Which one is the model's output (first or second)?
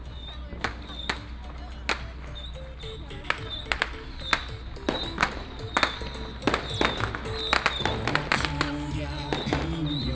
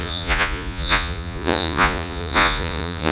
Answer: second